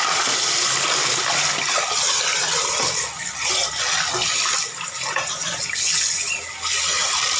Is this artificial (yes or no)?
no